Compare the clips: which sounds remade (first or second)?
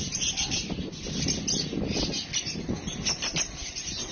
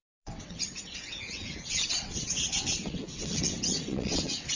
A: second